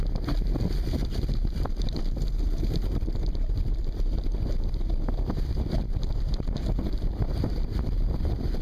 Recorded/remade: remade